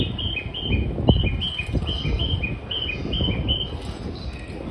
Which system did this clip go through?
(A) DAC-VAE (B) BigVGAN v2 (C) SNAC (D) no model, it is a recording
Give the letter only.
D